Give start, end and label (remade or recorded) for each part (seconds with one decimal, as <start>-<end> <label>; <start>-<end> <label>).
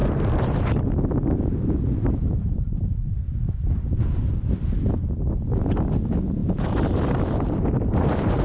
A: 0.0-0.7 recorded; 0.7-6.4 remade; 6.4-7.0 recorded; 7.0-8.4 remade